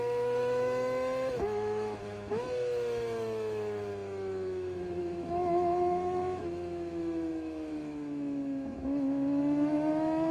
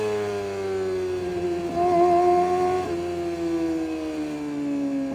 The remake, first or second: first